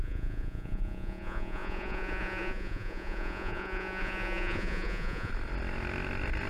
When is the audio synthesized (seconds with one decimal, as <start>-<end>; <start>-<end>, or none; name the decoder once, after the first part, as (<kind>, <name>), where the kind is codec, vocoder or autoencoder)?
0.0-5.3 (vocoder, Vocos)